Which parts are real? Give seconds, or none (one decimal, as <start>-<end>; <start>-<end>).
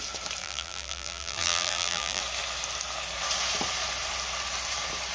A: 0.0-0.4; 2.2-5.1